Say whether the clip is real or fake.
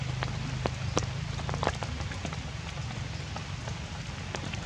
real